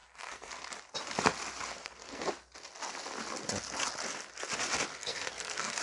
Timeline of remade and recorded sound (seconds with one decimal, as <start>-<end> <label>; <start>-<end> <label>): 0.0-0.5 remade; 0.5-1.7 recorded; 1.7-2.3 remade; 2.3-4.9 recorded; 4.9-5.8 remade